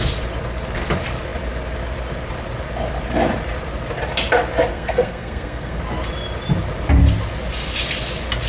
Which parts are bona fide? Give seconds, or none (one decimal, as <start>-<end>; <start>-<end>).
0.0-4.7; 5.8-8.5